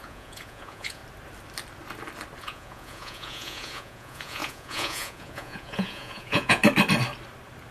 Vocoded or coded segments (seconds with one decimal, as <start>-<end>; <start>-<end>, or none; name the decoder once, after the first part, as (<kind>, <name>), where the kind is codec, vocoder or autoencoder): 0.0-1.0 (vocoder, Vocos); 2.4-6.6